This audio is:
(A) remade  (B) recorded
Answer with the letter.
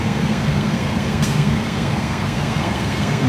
A